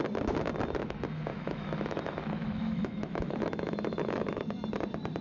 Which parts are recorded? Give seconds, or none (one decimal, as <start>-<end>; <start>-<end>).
0.0-1.3; 4.4-5.2